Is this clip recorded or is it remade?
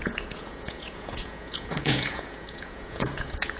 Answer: remade